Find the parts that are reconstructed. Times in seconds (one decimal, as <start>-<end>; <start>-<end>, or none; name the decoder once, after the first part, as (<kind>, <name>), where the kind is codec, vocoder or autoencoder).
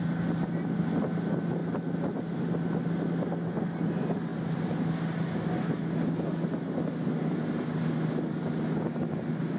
none